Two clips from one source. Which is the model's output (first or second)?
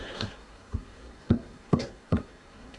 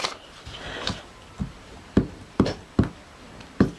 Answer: first